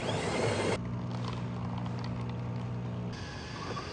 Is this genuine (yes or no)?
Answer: yes